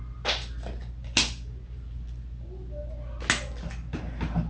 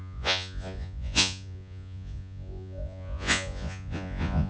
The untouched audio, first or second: first